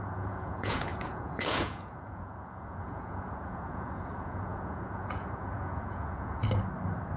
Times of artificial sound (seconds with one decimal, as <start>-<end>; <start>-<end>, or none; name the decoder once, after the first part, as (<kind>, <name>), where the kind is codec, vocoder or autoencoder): 0.0-6.4 (vocoder, Vocos)